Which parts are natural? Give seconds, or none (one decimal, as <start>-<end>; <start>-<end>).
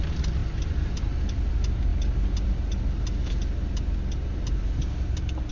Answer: 0.0-5.5